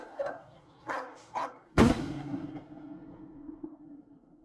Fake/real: fake